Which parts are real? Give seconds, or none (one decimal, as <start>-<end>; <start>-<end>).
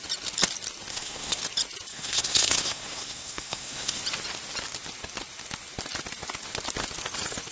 0.0-0.9; 1.4-1.9; 4.0-7.5